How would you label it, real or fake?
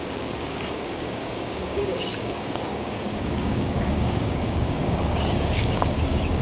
fake